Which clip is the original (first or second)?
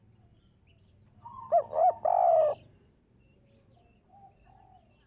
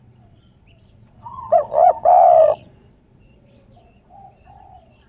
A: first